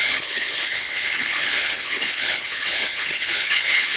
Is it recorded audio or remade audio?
remade